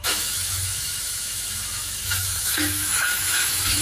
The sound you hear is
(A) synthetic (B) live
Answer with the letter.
A